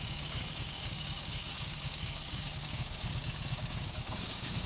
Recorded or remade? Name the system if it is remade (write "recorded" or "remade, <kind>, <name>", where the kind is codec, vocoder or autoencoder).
remade, codec, DAC